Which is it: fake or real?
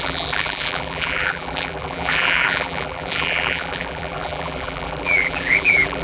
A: fake